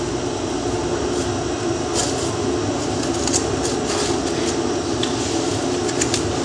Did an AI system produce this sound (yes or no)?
no